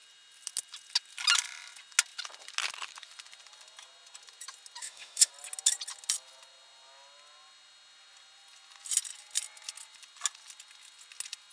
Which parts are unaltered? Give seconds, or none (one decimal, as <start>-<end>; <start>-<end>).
0.0-4.8; 5.3-11.5